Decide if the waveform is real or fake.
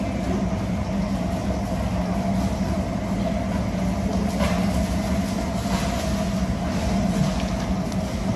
real